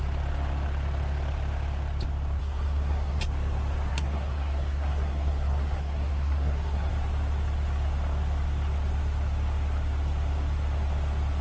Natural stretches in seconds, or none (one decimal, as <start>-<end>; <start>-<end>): 0.0-2.4; 3.2-3.9; 6.9-11.4